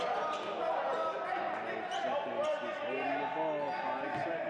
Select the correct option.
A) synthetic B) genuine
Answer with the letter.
B